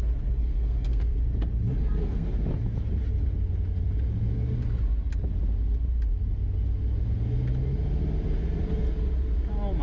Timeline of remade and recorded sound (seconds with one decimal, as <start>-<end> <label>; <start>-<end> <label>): 0.0-0.4 recorded; 0.4-1.2 remade; 1.2-1.8 recorded; 1.8-2.3 remade; 2.3-9.8 recorded

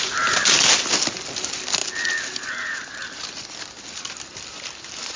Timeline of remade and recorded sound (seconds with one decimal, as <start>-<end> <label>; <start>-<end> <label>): 0.0-5.2 recorded

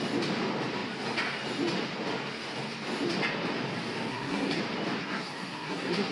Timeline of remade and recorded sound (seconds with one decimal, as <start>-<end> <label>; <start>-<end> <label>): 0.0-4.1 recorded; 4.1-4.6 remade; 4.6-5.0 recorded; 5.0-6.1 remade

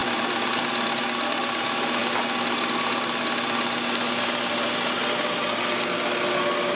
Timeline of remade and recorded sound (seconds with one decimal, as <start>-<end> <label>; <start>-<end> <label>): 0.0-6.7 recorded

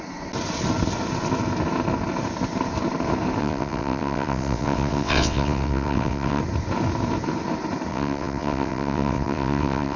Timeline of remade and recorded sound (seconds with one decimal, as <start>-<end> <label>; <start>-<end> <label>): 0.0-3.4 recorded; 3.4-6.4 remade; 6.4-7.9 recorded; 7.9-10.0 remade

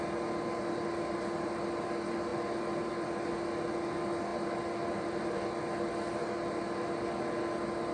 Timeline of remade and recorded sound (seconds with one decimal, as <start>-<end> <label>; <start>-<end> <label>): 0.0-7.9 recorded